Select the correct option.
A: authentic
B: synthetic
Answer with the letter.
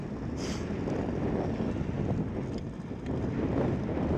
A